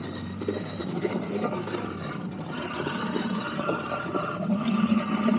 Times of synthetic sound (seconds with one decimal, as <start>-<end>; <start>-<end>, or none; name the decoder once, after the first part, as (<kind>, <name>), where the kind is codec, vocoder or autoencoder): 0.8-4.0 (vocoder, BigVGAN v2)

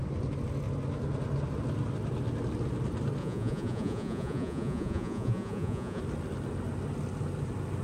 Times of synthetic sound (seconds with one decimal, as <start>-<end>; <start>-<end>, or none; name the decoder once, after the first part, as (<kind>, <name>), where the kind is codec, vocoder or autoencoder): 3.2-6.0 (vocoder, Vocos)